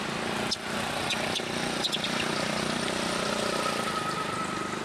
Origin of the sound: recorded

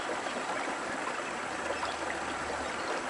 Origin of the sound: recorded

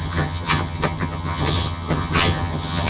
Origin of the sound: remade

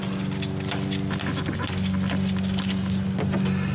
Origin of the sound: recorded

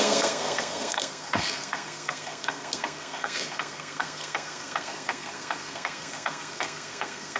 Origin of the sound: remade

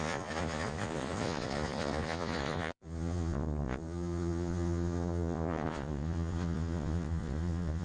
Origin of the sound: remade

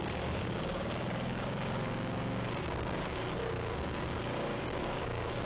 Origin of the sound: remade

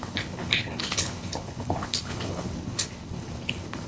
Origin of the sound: remade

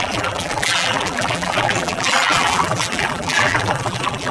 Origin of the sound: remade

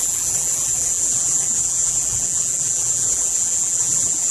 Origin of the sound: remade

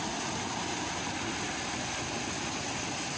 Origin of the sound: recorded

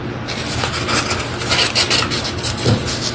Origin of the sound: recorded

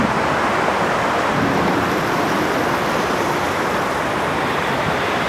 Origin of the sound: remade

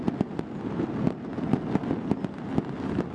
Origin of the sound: recorded